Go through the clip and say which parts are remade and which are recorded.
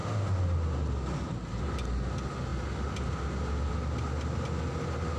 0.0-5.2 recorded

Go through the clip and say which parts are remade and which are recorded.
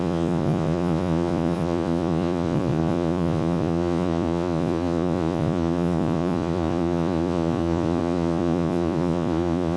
0.0-9.8 remade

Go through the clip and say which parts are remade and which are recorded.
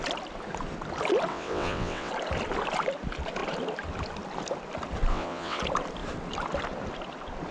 0.0-1.3 recorded; 1.3-2.1 remade; 2.1-5.1 recorded; 5.1-5.6 remade; 5.6-7.5 recorded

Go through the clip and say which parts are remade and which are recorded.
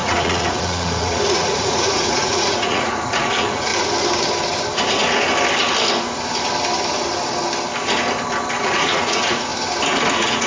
0.0-3.7 remade; 3.7-8.6 recorded; 8.6-9.5 remade; 9.5-10.1 recorded; 10.1-10.5 remade